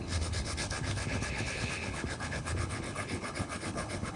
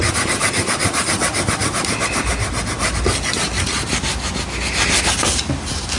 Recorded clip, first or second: second